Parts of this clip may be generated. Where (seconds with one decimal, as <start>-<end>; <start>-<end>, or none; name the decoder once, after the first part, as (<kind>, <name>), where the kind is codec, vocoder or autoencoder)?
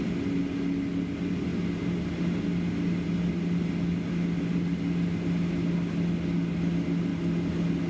none